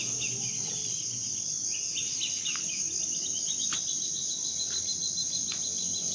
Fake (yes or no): no